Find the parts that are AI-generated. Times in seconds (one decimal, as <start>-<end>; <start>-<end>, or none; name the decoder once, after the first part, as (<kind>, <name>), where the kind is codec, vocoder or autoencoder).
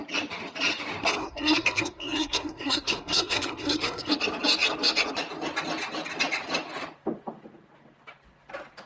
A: 1.2-4.1 (codec, SNAC)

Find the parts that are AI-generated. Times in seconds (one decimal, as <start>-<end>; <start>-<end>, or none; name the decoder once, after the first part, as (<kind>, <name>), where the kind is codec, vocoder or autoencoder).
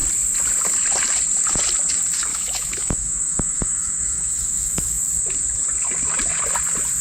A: 2.3-5.0 (autoencoder, DAC-VAE)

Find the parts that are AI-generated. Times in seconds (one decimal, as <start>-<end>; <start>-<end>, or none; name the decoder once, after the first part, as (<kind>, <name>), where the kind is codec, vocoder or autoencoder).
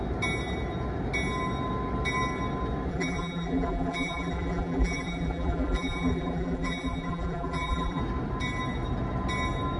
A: 2.9-8.0 (vocoder, BigVGAN v2)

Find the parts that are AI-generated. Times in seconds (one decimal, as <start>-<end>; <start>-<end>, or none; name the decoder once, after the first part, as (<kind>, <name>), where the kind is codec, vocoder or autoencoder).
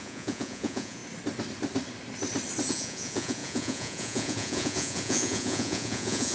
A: 0.0-1.0 (vocoder, Vocos); 2.7-6.3